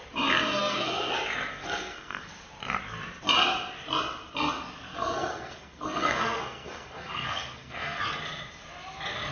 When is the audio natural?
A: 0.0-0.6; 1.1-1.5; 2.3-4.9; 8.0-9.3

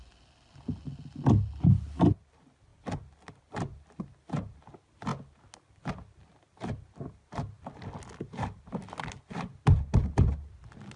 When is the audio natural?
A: 0.0-11.0

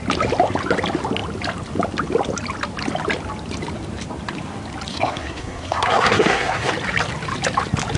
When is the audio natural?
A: 0.0-4.9; 6.7-8.0

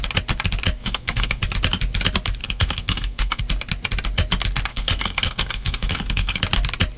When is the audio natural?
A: 0.0-0.8; 1.4-2.4; 3.4-4.7; 6.4-7.0

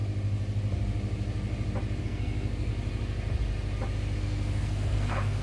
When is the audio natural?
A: 0.0-2.0; 2.7-4.2

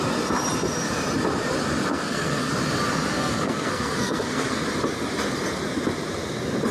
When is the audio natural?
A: 0.0-1.9; 2.5-3.1; 4.6-6.7

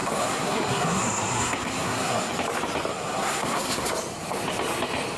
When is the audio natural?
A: 2.3-2.9; 3.9-5.2